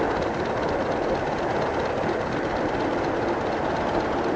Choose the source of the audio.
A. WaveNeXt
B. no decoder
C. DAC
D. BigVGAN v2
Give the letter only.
B